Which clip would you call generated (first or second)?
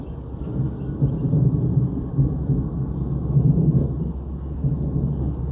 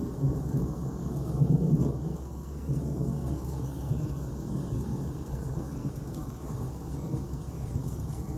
second